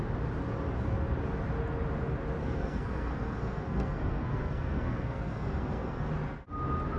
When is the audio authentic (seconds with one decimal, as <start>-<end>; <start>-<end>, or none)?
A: 0.0-2.4; 6.1-7.0